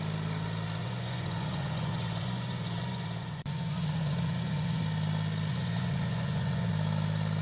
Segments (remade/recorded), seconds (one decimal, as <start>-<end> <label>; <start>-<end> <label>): 0.0-0.8 recorded; 0.8-4.8 remade; 4.8-5.5 recorded; 5.5-6.7 remade; 6.7-7.4 recorded